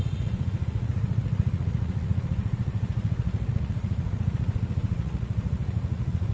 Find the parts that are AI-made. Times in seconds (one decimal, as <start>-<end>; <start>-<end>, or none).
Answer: 0.0-6.3

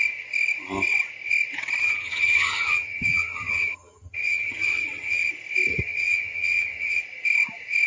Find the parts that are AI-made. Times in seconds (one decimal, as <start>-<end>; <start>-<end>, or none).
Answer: 1.8-5.3; 5.7-7.0

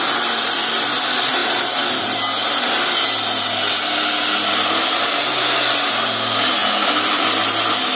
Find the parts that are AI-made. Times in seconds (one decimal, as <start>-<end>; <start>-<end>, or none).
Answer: none

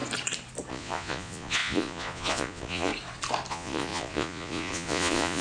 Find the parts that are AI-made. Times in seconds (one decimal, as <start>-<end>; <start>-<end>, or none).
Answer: 0.7-2.9; 3.5-5.4

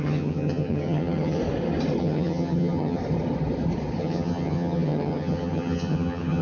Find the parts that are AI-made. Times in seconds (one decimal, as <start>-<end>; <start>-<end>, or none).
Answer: 0.0-1.4; 2.0-3.0; 4.0-6.4